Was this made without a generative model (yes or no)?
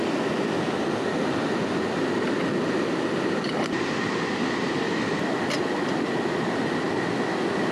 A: yes